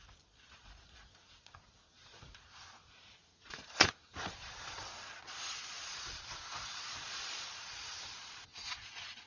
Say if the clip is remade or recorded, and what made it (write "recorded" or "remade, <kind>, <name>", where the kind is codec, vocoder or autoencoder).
remade, vocoder, Vocos